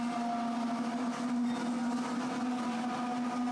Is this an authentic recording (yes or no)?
yes